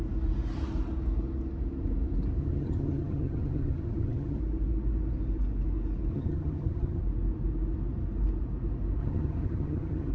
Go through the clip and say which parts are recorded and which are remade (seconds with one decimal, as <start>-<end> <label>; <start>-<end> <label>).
0.0-2.4 recorded; 2.4-4.4 remade; 4.4-6.1 recorded; 6.1-7.0 remade; 7.0-9.0 recorded; 9.0-10.1 remade